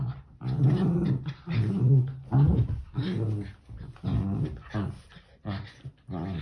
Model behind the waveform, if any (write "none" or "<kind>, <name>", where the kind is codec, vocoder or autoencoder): none